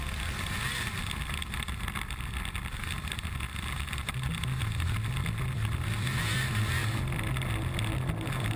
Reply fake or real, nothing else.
real